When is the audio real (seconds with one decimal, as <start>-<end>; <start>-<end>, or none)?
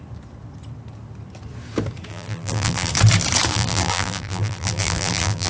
0.0-2.1; 2.9-3.5